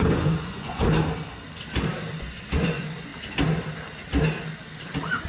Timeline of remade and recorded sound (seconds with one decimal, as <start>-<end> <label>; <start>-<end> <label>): 0.0-0.8 remade; 0.8-2.1 recorded; 2.1-3.1 remade; 3.1-5.3 recorded